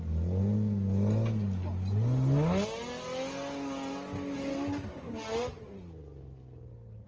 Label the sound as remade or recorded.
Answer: recorded